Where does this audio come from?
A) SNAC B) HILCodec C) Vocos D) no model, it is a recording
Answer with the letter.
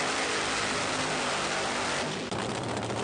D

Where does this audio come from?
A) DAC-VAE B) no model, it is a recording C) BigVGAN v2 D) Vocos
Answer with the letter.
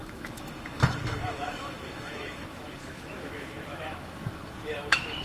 A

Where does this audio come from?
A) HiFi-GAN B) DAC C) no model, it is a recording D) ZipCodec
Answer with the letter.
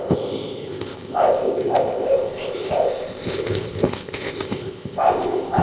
D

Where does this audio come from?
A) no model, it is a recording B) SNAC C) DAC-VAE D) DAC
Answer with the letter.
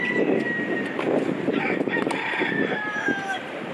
A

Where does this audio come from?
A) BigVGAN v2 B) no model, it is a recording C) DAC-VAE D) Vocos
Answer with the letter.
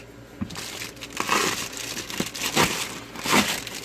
B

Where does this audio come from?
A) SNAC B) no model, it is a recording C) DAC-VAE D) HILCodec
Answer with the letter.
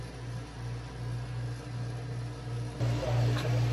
B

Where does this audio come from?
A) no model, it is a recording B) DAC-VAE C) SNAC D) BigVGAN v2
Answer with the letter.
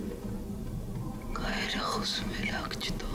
A